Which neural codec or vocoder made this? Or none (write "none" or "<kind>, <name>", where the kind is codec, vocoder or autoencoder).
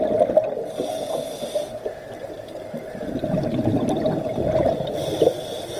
none